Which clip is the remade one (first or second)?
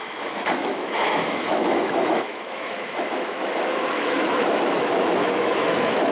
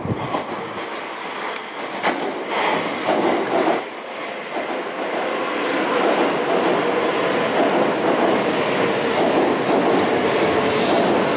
first